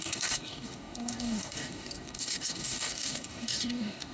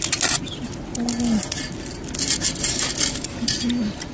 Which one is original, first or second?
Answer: second